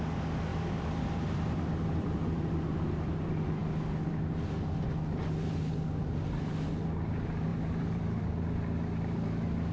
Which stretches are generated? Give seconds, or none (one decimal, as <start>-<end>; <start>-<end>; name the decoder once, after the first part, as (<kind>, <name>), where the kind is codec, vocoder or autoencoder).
0.5-3.1 (vocoder, BigVGAN v2); 7.5-8.3